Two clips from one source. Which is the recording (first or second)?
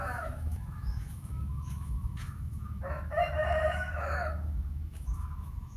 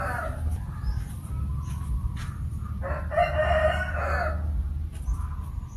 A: second